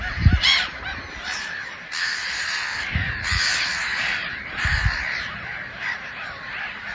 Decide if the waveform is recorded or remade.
remade